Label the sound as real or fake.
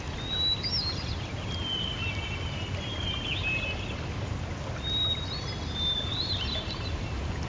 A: real